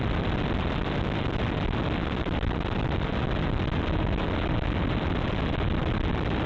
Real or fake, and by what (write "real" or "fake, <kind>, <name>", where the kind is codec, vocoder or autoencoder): real